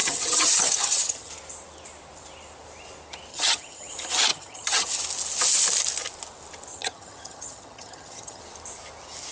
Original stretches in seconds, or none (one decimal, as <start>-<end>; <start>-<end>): 1.3-3.3; 3.9-4.3; 5.0-6.7; 8.4-9.3